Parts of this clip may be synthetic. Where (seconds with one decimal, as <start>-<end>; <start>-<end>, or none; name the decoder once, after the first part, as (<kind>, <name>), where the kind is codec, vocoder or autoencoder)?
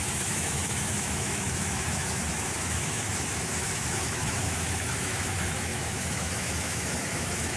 0.0-7.6 (autoencoder, DAC-VAE)